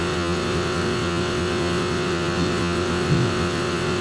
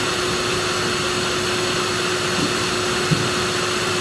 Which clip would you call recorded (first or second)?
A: second